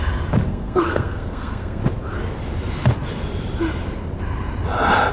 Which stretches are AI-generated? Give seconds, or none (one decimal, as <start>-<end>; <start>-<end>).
0.5-1.8